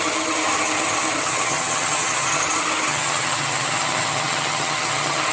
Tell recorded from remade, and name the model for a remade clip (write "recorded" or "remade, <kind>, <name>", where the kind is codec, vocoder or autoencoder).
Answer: remade, vocoder, HiFi-GAN